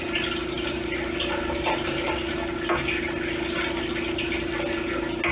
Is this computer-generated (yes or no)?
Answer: no